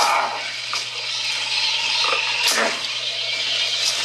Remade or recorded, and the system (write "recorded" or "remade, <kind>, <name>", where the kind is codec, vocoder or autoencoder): recorded